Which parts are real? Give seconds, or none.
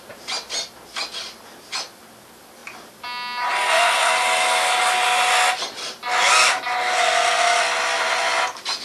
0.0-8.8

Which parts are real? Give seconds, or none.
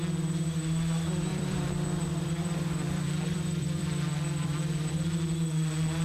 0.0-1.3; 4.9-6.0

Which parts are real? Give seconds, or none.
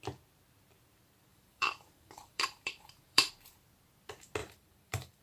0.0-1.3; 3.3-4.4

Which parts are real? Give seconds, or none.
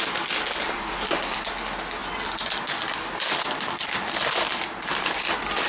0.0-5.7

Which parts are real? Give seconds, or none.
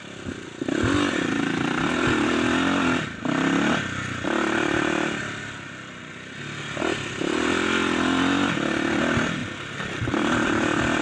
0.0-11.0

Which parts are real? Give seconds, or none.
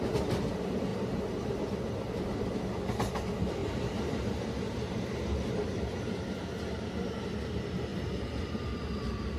0.0-0.9; 1.7-3.6; 6.9-9.4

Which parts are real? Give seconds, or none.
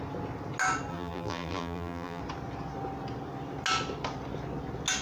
0.0-0.9; 2.2-5.0